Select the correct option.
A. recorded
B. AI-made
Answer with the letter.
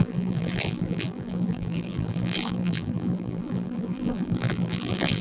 B